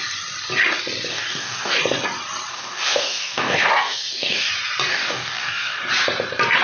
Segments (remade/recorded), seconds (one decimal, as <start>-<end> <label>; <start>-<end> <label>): 0.0-1.1 recorded; 1.1-1.8 remade; 1.8-2.5 recorded; 2.5-4.5 remade; 4.5-4.9 recorded; 4.9-5.8 remade; 5.8-6.6 recorded